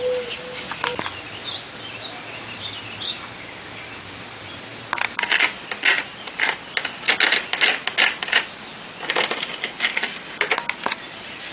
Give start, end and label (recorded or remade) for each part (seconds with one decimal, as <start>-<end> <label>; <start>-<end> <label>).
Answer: 0.0-11.5 recorded